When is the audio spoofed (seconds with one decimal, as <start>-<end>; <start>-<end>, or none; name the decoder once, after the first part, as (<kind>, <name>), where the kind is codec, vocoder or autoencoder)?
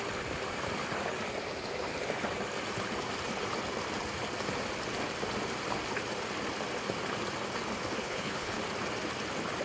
8.0-8.6 (codec, HILCodec)